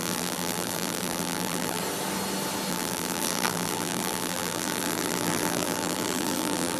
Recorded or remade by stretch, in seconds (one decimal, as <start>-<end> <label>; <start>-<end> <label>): 0.0-1.8 remade; 1.8-2.7 recorded; 2.7-6.8 remade